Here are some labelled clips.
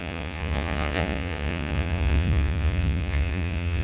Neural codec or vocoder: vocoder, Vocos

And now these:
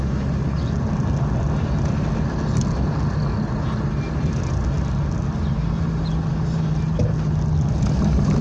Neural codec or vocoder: none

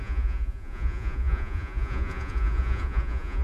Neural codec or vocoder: vocoder, Vocos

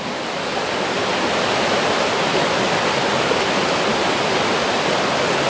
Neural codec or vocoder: none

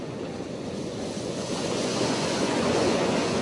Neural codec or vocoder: vocoder, Vocos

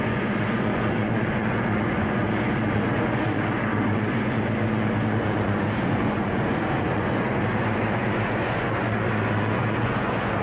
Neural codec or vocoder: vocoder, Vocos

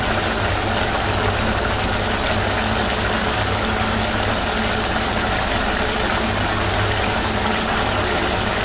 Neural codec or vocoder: none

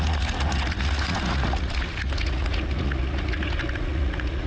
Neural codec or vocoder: vocoder, Vocos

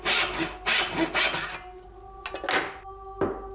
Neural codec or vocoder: none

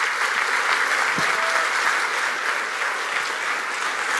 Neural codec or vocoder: none